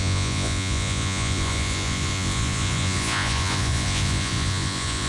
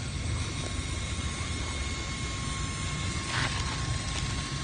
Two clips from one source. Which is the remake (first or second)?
first